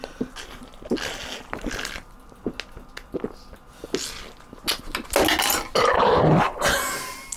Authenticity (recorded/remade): recorded